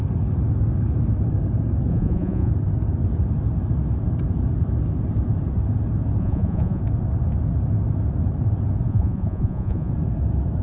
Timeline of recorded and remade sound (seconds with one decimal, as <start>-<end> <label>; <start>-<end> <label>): 0.0-1.9 recorded; 1.9-2.5 remade; 2.5-6.2 recorded; 6.2-6.8 remade; 6.8-8.9 recorded; 8.9-9.9 remade; 9.9-10.6 recorded